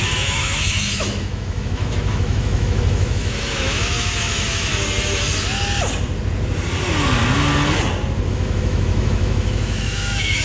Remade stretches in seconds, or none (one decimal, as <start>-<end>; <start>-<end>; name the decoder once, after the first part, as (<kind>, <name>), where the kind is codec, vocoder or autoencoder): 0.0-4.7 (autoencoder, DAC-VAE); 8.3-10.4

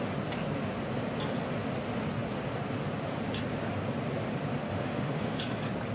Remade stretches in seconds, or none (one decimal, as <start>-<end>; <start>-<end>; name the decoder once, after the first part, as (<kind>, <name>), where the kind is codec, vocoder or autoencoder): 4.7-5.4 (autoencoder, DAC-VAE)

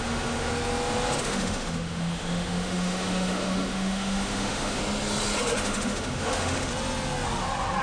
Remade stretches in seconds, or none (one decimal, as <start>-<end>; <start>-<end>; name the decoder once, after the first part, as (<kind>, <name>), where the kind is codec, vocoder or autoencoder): 0.0-0.5 (autoencoder, DAC-VAE); 1.2-4.8; 5.6-6.7

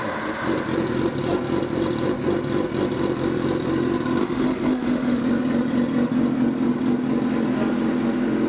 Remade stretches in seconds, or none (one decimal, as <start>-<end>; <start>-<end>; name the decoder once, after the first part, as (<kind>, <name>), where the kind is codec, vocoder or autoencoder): 4.2-5.2 (autoencoder, DAC-VAE)

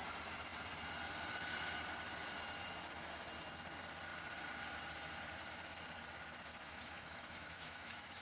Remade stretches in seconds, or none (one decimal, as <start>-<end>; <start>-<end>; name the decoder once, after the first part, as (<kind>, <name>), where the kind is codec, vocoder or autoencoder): 6.5-8.2 (autoencoder, DAC-VAE)

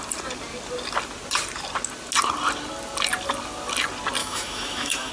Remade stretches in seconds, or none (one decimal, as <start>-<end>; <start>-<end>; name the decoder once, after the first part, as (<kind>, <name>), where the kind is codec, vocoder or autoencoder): 4.2-5.1 (autoencoder, DAC-VAE)

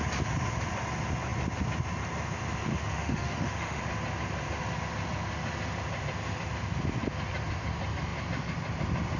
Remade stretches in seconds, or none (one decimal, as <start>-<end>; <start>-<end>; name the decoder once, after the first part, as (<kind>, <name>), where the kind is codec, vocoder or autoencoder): 2.7-3.8 (autoencoder, DAC-VAE)

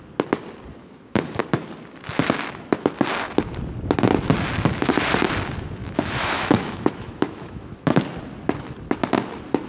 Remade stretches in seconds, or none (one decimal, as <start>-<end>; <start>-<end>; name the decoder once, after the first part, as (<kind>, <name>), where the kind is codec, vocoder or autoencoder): 0.8-1.4 (autoencoder, DAC-VAE); 5.8-8.0